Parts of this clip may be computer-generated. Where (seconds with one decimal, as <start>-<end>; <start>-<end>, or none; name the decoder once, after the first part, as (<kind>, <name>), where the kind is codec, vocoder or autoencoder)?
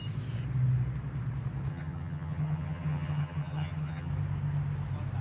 1.7-4.1 (vocoder, HiFi-GAN)